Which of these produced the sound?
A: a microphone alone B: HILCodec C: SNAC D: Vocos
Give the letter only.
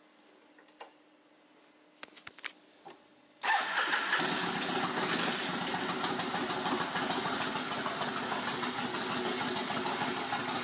A